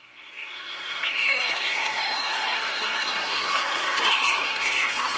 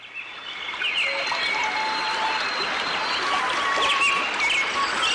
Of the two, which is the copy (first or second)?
first